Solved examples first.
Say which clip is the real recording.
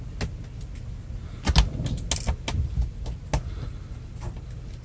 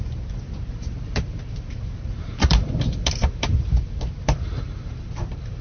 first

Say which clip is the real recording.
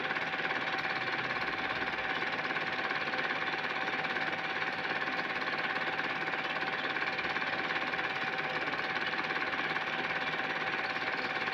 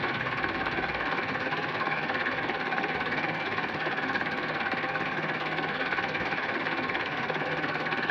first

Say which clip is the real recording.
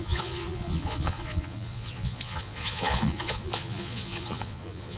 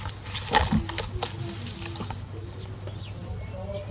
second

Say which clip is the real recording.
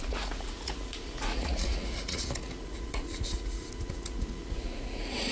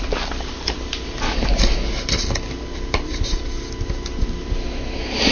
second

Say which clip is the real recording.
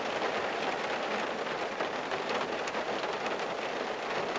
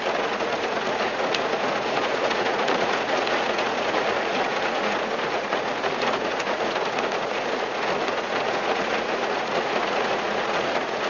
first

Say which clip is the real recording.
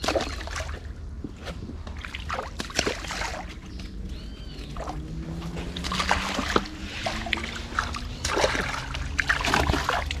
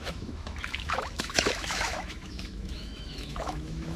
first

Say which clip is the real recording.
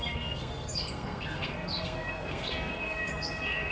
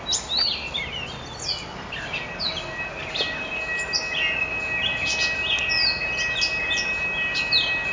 second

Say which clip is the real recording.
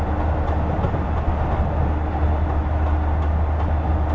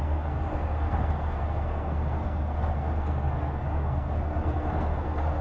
first